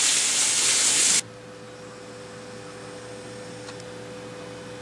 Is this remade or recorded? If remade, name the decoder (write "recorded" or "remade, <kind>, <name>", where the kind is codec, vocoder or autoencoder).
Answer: recorded